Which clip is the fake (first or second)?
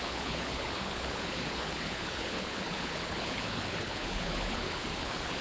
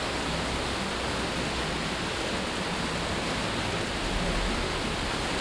first